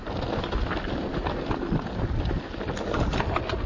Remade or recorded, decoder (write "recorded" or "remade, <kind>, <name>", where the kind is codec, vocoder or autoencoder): recorded